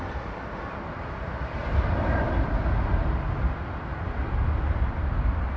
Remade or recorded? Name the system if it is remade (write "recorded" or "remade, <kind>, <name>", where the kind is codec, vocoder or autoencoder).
recorded